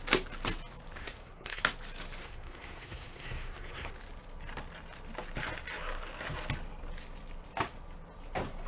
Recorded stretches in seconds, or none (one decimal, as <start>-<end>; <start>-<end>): 0.0-1.0; 1.6-2.2; 3.9-8.7